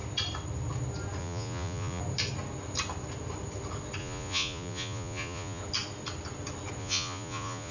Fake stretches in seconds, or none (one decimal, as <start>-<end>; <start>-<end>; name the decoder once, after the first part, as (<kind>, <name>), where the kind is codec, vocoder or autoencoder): 1.2-2.0 (vocoder, Vocos); 4.0-5.6; 6.8-7.7